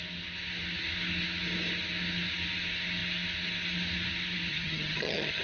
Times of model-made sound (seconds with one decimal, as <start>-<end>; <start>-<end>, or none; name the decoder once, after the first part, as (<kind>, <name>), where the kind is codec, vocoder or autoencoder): 4.5-5.4 (vocoder, HiFi-GAN)